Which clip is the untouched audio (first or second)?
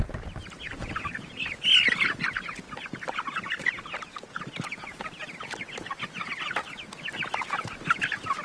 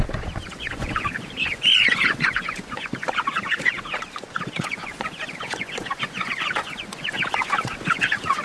first